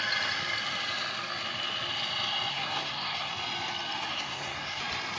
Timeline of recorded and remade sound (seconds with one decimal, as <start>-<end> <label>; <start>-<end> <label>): 0.0-2.5 recorded; 2.5-3.3 remade; 3.3-4.1 recorded; 4.1-4.8 remade; 4.8-5.2 recorded